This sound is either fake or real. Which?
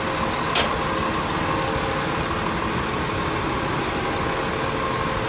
real